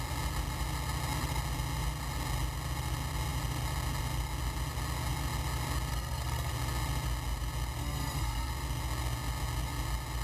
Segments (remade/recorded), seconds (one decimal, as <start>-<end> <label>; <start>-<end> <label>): 0.0-5.9 recorded; 5.9-6.5 remade; 6.5-7.8 recorded; 7.8-8.5 remade; 8.5-10.2 recorded